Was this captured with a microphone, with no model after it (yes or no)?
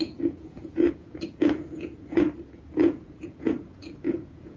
no